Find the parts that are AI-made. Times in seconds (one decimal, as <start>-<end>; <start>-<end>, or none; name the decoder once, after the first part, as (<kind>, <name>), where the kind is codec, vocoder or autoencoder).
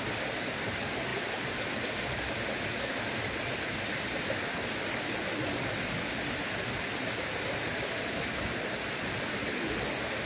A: 1.1-2.4 (vocoder, BigVGAN v2)